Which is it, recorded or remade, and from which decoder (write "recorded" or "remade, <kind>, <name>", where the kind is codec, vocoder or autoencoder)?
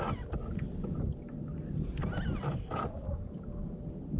recorded